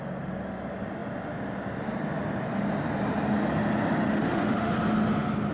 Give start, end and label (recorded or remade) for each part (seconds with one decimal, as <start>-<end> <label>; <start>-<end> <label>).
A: 0.0-4.1 recorded; 4.1-4.7 remade; 4.7-5.5 recorded